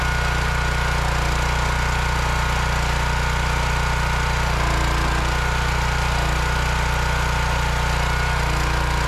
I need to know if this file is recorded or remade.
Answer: recorded